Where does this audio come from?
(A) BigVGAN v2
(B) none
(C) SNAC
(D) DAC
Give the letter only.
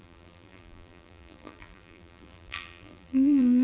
A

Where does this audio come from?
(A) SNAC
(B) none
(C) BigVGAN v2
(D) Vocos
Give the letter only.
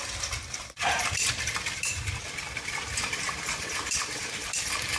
C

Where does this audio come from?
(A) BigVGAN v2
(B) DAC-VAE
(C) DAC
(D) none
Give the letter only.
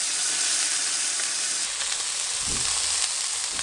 D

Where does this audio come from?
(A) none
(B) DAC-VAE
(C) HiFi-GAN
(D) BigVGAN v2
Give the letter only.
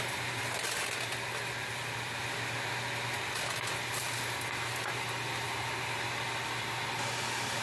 A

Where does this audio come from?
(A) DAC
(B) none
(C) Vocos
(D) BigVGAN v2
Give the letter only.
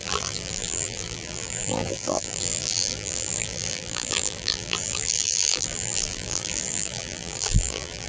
D